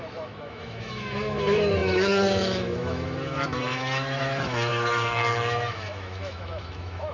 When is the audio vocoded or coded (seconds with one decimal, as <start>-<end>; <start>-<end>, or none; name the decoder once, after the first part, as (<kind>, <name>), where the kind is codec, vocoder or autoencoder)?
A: 0.0-7.1 (autoencoder, DAC-VAE)